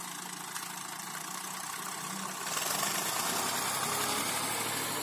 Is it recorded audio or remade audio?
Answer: recorded